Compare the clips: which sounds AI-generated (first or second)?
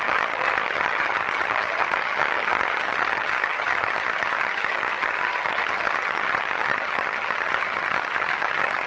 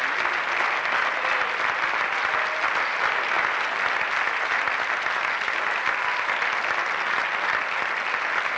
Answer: first